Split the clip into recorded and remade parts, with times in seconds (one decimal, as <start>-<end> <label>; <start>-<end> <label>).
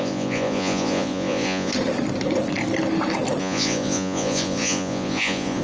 0.0-1.7 remade; 1.7-3.4 recorded; 3.4-5.6 remade